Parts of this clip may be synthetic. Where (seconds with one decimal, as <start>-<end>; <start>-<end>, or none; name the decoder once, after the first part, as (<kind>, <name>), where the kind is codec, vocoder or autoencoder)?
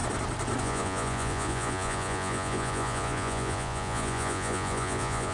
0.6-5.3 (vocoder, Vocos)